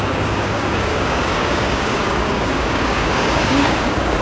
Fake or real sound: fake